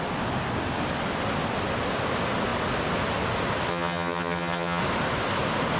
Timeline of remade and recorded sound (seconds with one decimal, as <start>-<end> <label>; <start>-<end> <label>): 0.0-3.7 recorded; 3.7-4.8 remade; 4.8-5.8 recorded